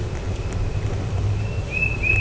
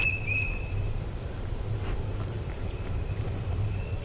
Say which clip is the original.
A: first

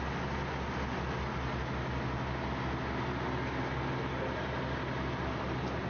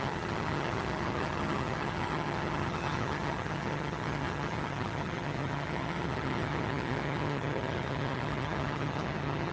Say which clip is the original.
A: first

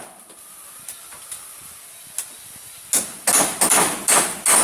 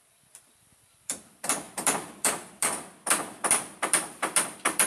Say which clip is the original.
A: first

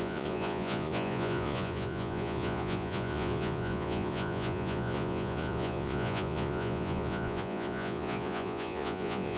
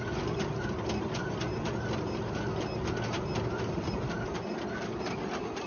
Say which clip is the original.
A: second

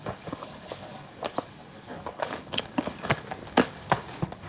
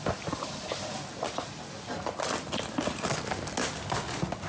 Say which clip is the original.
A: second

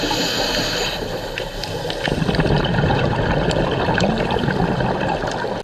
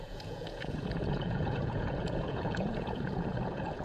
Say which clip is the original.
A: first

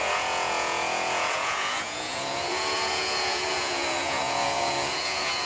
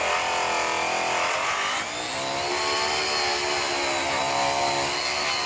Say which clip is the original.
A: second